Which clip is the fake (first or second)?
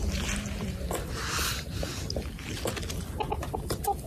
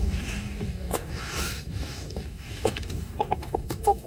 second